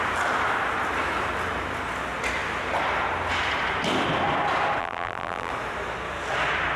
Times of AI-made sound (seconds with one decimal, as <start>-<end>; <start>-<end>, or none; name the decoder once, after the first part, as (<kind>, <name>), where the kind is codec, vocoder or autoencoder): 4.8-5.5 (vocoder, BigVGAN v2)